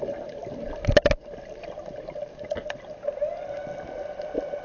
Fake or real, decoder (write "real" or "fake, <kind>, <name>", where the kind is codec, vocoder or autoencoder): real